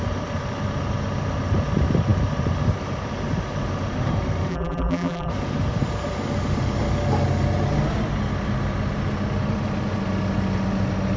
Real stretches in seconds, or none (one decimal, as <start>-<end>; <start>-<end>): 0.0-4.5; 5.3-11.2